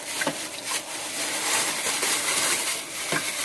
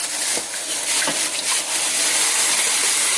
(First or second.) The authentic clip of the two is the second